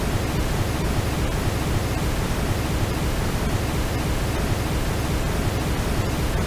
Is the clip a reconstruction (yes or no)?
no